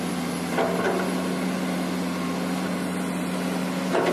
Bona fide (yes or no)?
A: yes